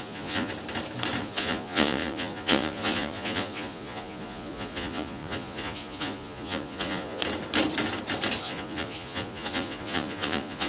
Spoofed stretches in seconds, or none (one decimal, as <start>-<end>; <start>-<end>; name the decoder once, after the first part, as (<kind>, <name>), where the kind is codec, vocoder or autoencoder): 0.0-0.5 (vocoder, Vocos); 1.2-7.2; 8.4-10.7